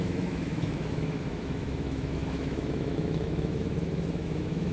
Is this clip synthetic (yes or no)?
yes